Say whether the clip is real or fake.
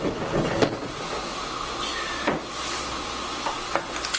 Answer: real